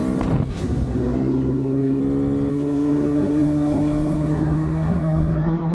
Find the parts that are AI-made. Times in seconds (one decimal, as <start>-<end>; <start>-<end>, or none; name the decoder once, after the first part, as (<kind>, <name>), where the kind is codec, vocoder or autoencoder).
0.5-2.0 (codec, SNAC); 2.5-5.7